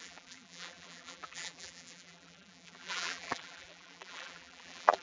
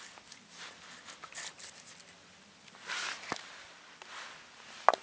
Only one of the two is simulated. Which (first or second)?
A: first